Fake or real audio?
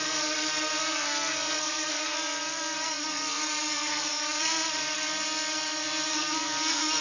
fake